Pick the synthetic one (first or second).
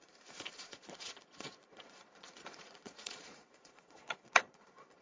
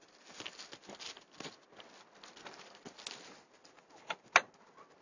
first